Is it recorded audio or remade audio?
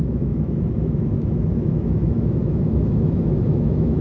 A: remade